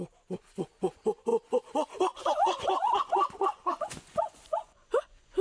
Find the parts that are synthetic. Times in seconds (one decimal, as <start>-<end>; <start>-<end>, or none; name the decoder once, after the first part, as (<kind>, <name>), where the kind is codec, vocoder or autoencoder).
0.0-5.4 (vocoder, Vocos)